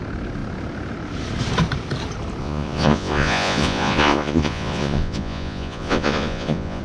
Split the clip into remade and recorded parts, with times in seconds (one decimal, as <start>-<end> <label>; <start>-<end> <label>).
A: 0.0-2.4 recorded; 2.4-6.8 remade